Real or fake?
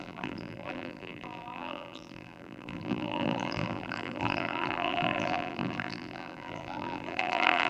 fake